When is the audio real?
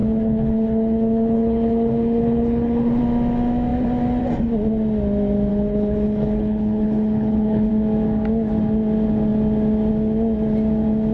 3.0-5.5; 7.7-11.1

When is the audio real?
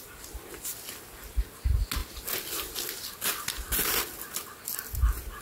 0.0-5.4